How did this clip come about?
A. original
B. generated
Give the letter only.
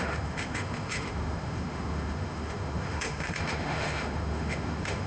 B